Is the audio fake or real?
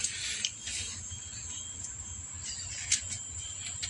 real